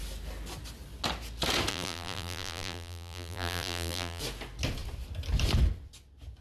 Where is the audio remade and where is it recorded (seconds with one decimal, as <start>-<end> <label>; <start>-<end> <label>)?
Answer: 0.0-1.7 recorded; 1.7-4.2 remade; 4.2-6.4 recorded